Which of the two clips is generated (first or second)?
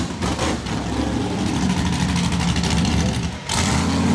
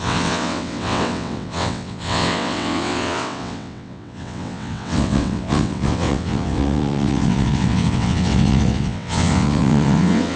second